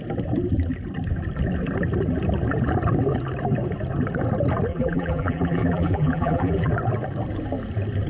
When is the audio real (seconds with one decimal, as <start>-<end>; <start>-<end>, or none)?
0.0-4.7; 6.7-8.1